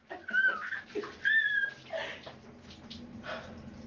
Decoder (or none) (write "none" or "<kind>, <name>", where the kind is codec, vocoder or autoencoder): none